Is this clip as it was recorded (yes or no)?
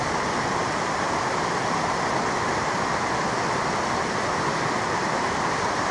yes